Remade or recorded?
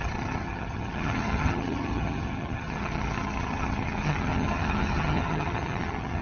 remade